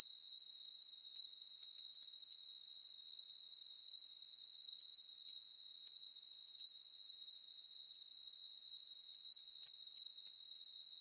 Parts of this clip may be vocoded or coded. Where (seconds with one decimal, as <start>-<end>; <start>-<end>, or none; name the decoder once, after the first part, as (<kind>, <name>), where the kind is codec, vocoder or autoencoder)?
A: 2.8-3.7 (vocoder, BigVGAN v2)